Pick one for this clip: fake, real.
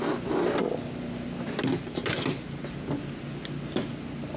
real